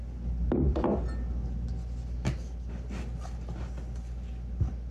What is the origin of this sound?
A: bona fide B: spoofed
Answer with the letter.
A